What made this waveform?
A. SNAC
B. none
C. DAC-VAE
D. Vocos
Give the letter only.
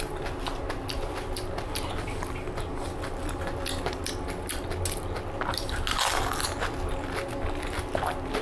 B